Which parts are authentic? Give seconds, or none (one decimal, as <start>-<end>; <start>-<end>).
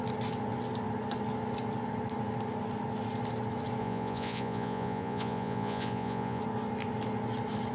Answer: 0.0-3.8; 6.4-7.7